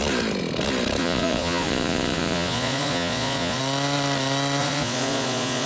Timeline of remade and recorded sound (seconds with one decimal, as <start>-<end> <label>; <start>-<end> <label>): 0.0-1.0 recorded; 1.0-3.6 remade; 3.6-4.6 recorded; 4.6-5.7 remade